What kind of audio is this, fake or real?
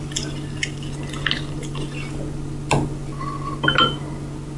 real